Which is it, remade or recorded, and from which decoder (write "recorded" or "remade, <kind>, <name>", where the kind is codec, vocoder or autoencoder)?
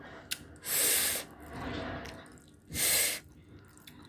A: recorded